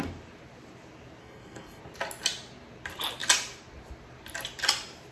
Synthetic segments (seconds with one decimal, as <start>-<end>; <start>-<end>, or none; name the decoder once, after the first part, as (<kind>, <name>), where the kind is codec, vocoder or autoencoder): 1.2-1.8 (codec, SNAC)